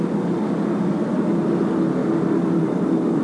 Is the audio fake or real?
fake